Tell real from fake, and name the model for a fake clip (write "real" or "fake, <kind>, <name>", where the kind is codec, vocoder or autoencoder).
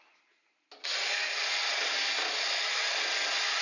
real